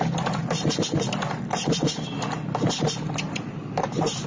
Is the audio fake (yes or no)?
no